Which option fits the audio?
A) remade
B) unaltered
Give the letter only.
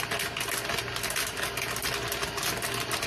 B